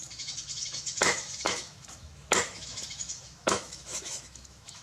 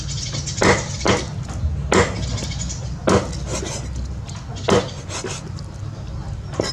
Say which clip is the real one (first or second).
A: second